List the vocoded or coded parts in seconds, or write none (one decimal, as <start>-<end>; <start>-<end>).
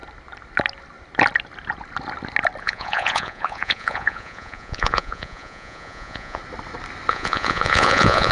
2.6-6.4; 7.1-8.3